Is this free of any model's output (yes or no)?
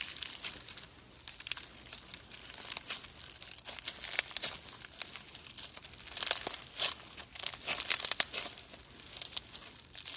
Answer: yes